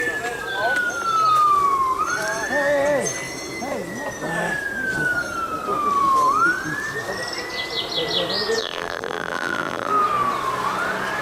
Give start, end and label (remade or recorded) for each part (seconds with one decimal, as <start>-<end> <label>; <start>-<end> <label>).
0.0-8.6 recorded; 8.6-9.9 remade; 9.9-11.2 recorded